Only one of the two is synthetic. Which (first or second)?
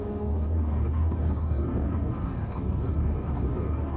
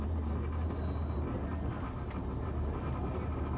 first